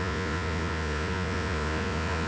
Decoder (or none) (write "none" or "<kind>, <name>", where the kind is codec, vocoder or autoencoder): vocoder, Vocos